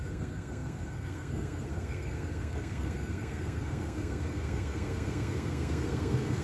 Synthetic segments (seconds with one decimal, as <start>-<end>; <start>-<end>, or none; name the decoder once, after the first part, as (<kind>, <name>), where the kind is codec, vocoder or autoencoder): 0.0-6.4 (codec, SNAC)